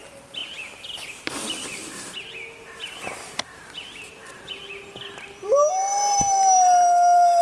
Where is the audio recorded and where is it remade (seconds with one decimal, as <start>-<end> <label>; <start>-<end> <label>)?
0.0-7.4 recorded